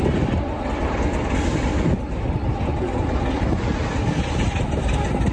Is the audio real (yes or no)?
yes